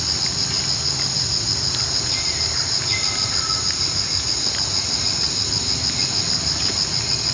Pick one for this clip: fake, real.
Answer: real